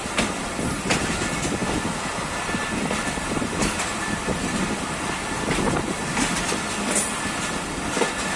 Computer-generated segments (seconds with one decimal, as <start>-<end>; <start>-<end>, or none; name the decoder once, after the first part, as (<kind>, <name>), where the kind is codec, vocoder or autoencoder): none